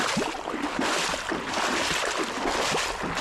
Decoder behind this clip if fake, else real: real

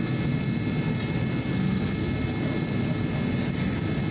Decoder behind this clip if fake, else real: real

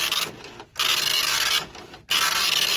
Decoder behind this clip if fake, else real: real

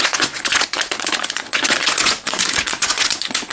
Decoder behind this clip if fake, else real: fake, vocoder, Vocos